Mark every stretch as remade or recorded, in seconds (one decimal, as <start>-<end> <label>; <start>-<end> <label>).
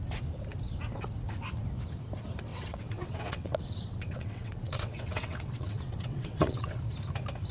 0.0-2.5 recorded; 2.5-6.8 remade; 6.8-7.5 recorded